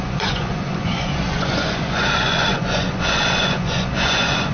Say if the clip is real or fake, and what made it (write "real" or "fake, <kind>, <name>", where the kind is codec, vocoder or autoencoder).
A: fake, vocoder, Vocos